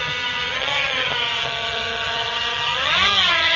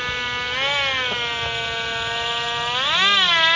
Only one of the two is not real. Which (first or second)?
first